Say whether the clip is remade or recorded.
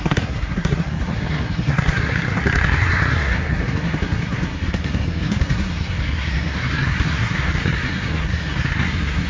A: remade